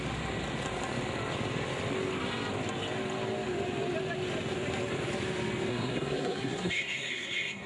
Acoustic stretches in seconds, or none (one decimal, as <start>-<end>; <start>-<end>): 0.0-5.7